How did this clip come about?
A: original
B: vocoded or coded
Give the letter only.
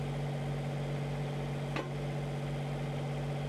A